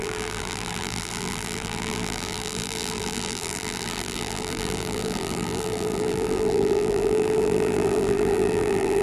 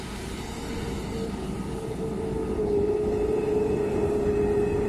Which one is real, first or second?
second